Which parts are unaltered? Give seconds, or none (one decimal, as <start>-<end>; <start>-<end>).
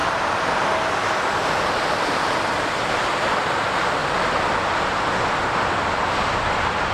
0.0-1.1; 4.0-5.4